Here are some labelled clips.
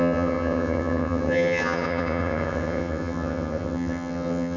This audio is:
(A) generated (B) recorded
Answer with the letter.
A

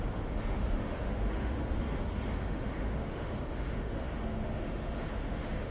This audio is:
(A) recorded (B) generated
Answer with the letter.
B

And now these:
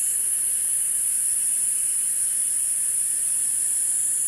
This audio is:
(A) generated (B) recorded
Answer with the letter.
B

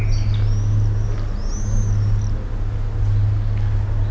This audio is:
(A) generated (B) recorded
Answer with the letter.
B